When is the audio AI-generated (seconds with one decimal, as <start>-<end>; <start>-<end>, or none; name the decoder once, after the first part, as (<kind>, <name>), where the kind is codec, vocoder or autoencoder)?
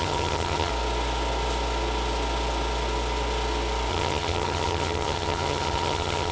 0.0-0.7 (vocoder, HiFi-GAN); 3.9-6.3